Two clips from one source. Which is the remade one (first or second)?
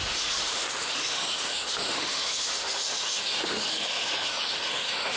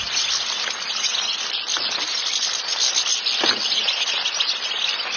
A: first